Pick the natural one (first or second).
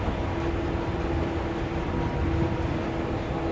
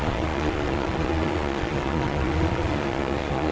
first